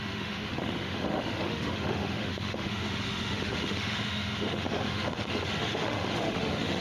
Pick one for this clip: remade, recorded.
remade